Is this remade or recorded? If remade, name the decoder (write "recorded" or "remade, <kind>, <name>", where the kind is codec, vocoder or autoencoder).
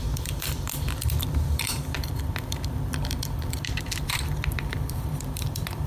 remade, vocoder, BigVGAN v2